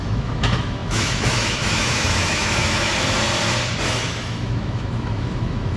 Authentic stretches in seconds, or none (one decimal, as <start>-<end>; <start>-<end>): 2.9-3.9